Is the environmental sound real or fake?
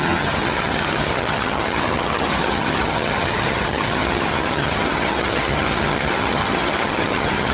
fake